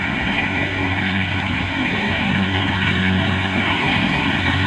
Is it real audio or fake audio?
fake